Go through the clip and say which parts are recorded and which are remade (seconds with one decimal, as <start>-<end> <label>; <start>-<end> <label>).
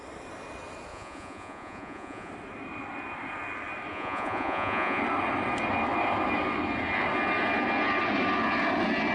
0.0-0.9 recorded; 0.9-2.3 remade; 2.3-3.9 recorded; 3.9-5.0 remade; 5.0-9.1 recorded